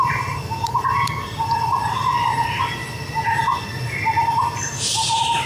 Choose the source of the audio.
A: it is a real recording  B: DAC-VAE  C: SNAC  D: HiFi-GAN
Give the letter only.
A